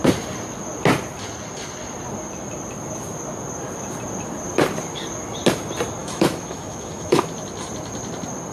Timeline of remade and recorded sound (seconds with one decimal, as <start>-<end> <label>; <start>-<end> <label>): 0.0-6.0 recorded; 6.0-7.2 remade; 7.2-8.5 recorded